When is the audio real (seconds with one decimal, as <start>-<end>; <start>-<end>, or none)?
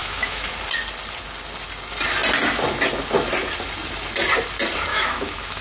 0.5-4.9